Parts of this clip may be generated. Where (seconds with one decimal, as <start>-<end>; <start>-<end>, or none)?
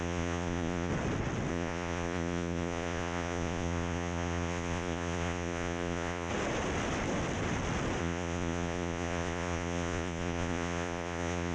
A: 0.0-0.9; 1.5-6.3; 8.0-11.5